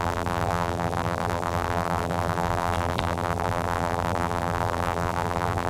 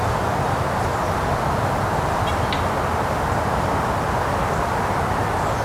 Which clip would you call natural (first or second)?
second